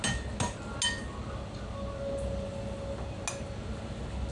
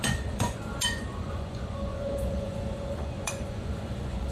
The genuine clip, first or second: first